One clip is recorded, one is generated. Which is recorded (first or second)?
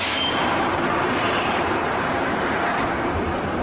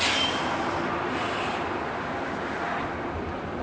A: second